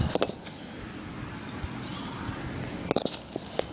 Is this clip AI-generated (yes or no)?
no